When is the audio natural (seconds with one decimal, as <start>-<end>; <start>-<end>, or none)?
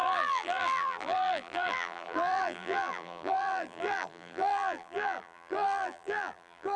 none